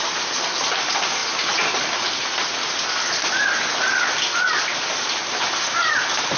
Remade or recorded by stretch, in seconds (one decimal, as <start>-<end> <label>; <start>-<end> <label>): 0.0-6.4 recorded